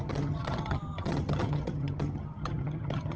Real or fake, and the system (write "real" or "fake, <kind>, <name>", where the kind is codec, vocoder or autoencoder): fake, vocoder, HiFi-GAN